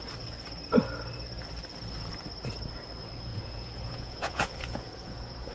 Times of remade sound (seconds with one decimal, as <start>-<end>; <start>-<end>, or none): 3.3-5.5